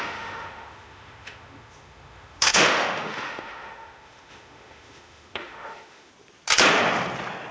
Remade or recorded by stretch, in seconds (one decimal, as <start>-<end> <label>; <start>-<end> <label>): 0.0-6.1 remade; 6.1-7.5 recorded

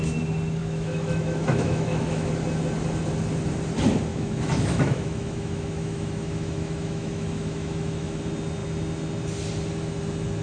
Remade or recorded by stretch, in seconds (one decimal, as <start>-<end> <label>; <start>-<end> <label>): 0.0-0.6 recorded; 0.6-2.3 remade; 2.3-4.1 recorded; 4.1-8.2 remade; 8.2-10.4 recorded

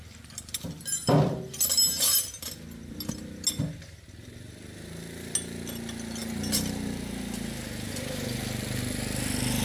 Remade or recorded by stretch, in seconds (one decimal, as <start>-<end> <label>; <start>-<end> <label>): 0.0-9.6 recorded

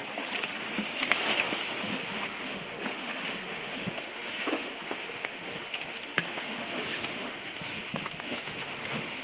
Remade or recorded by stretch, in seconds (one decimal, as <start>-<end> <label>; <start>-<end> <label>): 0.0-0.6 recorded; 0.6-9.2 remade